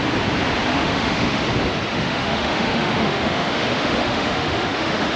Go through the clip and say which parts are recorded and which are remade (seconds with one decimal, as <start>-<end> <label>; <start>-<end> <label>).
0.0-0.7 recorded; 0.7-1.4 remade; 1.4-1.9 recorded; 1.9-5.2 remade